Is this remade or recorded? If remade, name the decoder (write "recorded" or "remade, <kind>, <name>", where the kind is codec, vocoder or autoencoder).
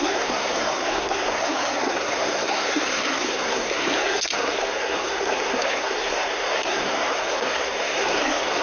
remade, codec, SNAC